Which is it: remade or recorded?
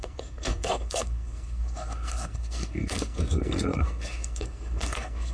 remade